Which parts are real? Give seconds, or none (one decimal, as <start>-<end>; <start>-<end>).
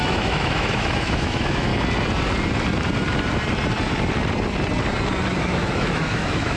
1.7-5.4